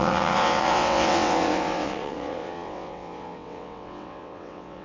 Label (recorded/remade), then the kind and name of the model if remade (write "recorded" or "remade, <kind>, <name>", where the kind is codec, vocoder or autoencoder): remade, vocoder, WaveNeXt